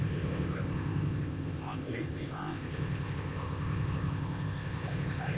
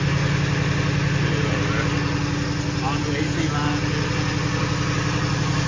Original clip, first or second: second